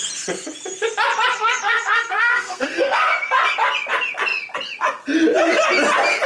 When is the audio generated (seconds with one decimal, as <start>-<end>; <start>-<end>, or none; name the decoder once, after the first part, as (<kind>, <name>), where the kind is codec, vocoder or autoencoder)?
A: 1.3-3.1 (codec, SNAC)

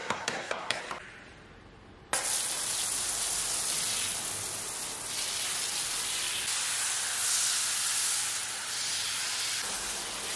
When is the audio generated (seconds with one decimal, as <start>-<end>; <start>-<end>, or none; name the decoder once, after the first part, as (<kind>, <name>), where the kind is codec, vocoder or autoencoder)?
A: 0.0-0.8 (codec, SNAC)

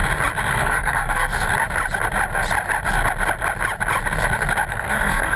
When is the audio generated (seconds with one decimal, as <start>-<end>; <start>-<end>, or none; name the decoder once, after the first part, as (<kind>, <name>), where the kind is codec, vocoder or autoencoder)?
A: 0.5-1.5 (codec, SNAC); 4.7-5.4